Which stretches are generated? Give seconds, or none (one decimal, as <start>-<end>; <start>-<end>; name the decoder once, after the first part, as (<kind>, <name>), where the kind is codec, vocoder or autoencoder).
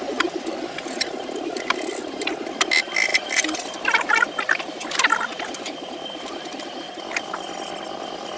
3.1-4.7 (vocoder, BigVGAN v2)